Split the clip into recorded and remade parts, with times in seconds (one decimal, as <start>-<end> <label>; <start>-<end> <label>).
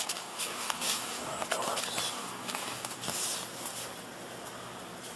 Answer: 0.0-1.3 remade; 1.3-2.1 recorded; 2.1-3.2 remade; 3.2-5.2 recorded